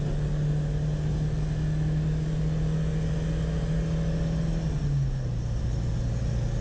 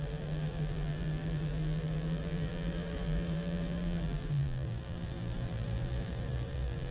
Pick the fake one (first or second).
second